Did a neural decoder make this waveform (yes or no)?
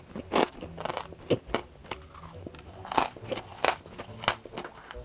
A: no